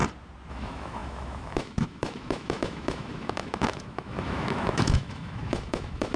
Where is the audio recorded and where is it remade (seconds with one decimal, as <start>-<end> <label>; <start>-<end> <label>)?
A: 0.0-0.5 recorded; 0.5-6.2 remade